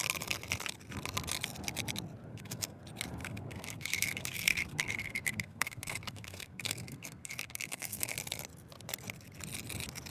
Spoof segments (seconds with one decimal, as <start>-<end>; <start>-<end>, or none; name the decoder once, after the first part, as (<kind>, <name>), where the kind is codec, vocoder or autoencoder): 2.3-2.8 (codec, SNAC); 3.2-8.1